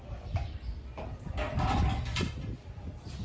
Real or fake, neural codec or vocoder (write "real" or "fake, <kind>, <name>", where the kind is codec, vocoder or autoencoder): real